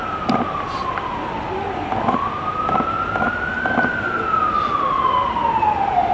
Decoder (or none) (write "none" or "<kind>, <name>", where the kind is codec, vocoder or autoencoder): none